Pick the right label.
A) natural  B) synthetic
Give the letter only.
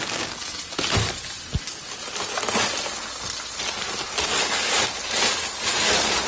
A